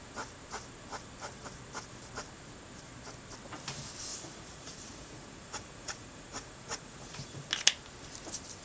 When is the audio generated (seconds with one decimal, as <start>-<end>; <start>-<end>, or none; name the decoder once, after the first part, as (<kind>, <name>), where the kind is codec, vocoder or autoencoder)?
4.1-7.5 (vocoder, Vocos)